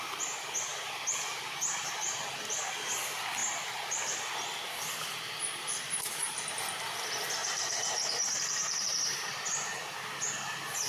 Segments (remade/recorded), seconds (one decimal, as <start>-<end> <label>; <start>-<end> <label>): 0.0-7.4 recorded; 7.4-9.3 remade; 9.3-10.9 recorded